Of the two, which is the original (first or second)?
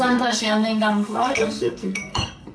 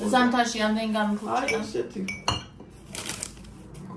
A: second